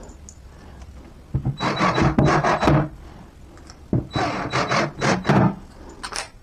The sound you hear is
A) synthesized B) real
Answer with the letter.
B